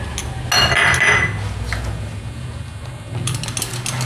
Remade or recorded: recorded